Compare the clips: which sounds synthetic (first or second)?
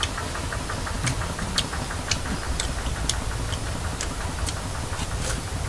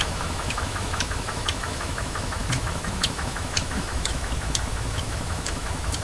second